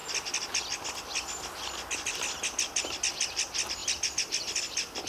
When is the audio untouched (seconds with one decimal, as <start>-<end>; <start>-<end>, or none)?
0.0-5.1